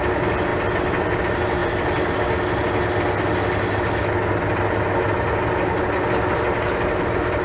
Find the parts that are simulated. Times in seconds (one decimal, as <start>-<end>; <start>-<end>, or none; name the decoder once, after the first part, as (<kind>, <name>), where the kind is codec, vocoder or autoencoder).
none